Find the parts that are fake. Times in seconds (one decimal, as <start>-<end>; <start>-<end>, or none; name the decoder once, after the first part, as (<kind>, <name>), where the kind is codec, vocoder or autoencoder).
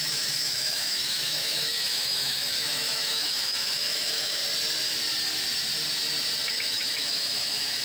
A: 0.0-4.4 (autoencoder, DAC-VAE); 6.5-7.8